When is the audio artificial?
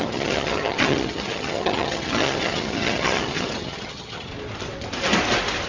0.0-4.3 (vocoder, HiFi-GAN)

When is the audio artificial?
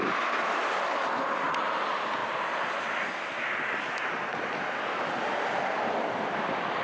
none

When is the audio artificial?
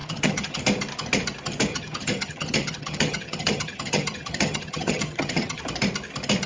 0.0-0.6 (vocoder, HiFi-GAN); 1.7-5.6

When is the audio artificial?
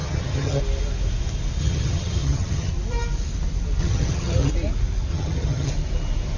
0.0-0.6 (vocoder, HiFi-GAN); 1.6-2.7; 3.8-4.5; 5.1-5.7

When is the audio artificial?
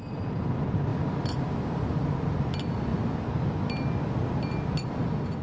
none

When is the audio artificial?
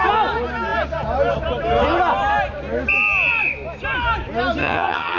4.6-5.2 (vocoder, HiFi-GAN)